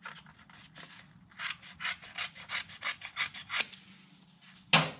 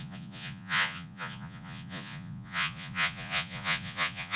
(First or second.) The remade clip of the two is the second